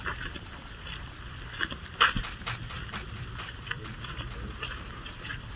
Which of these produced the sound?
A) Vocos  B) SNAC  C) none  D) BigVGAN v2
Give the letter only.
D